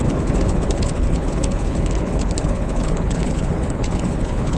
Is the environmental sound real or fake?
fake